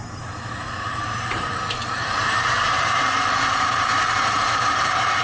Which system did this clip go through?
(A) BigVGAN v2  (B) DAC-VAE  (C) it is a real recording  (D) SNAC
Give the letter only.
A